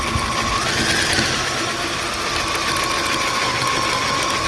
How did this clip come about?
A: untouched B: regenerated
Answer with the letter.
A